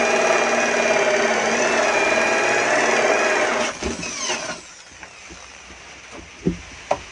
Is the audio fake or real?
real